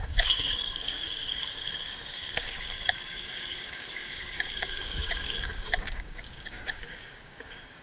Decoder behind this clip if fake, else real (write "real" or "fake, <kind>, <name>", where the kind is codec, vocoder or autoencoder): fake, codec, DAC